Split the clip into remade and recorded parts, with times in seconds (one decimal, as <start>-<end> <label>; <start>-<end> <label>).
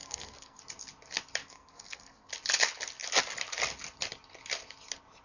0.0-0.6 remade; 0.6-1.4 recorded; 1.4-2.3 remade; 2.3-5.2 recorded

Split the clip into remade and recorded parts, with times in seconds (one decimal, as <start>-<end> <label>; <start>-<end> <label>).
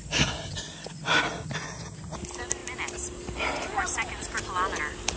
0.0-5.2 recorded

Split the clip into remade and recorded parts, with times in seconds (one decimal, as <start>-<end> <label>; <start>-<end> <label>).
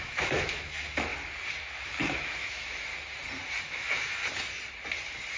0.0-1.1 remade; 1.1-1.6 recorded; 1.6-2.9 remade; 2.9-3.6 recorded; 3.6-4.2 remade; 4.2-5.4 recorded